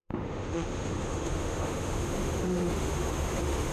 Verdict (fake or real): fake